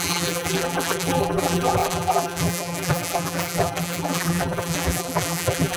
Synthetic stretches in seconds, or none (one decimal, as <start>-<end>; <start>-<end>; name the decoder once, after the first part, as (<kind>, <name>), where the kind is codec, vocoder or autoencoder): 0.0-5.8 (vocoder, BigVGAN v2)